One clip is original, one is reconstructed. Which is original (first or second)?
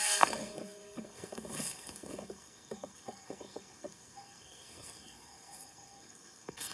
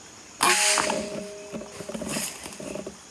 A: second